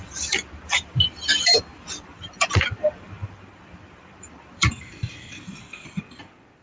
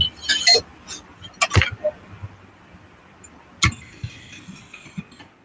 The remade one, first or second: first